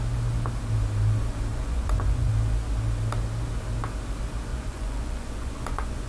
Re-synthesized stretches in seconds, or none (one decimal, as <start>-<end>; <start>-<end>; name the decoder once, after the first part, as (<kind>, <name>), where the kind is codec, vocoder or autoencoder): 1.5-2.3 (vocoder, Vocos); 4.5-6.1